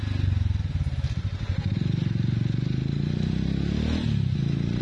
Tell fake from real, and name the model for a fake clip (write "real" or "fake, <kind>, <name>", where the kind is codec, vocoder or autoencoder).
real